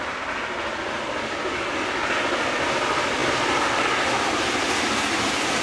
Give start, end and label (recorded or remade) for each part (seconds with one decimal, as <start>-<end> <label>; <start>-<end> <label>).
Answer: 0.0-5.6 recorded

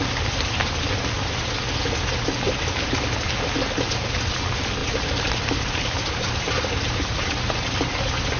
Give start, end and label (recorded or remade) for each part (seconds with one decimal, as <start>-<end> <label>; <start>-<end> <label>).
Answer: 0.0-4.8 recorded; 4.8-8.0 remade; 8.0-8.4 recorded

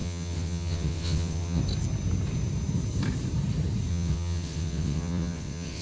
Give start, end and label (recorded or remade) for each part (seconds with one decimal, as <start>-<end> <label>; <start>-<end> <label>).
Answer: 0.0-1.6 remade; 1.6-3.9 recorded; 3.9-5.8 remade

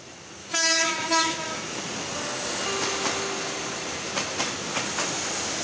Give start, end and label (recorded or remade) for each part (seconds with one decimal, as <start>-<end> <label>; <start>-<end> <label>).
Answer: 0.0-0.4 recorded; 0.4-1.8 remade; 1.8-5.6 recorded

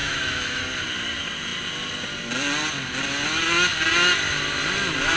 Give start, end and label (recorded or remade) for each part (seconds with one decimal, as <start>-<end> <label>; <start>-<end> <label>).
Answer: 0.0-0.6 remade; 0.6-5.2 recorded

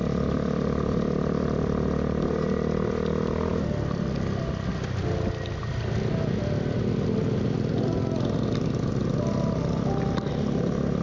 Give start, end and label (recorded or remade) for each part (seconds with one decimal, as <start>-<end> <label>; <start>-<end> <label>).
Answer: 0.0-11.0 recorded